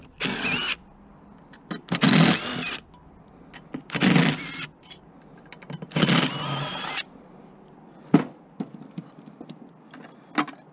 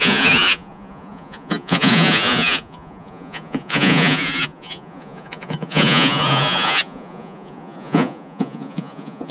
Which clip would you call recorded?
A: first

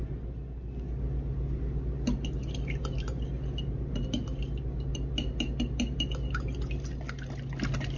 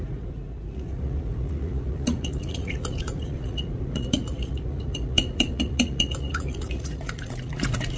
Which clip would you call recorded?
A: first